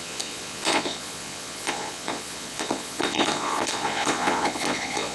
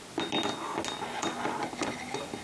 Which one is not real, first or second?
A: first